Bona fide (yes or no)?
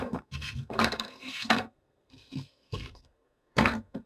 no